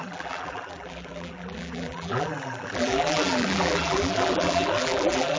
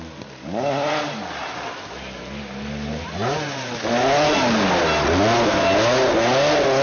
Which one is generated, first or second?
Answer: first